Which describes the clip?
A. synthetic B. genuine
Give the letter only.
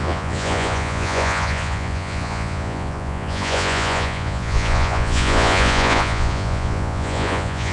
A